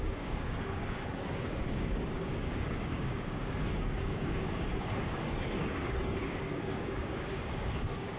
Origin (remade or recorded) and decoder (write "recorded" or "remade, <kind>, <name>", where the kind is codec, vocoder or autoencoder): remade, codec, DAC